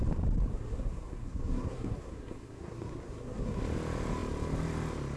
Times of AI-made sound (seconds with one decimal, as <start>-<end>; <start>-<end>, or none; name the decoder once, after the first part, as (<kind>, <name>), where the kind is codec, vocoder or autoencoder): 0.5-3.6 (codec, SNAC)